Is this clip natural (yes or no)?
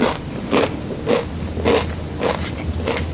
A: yes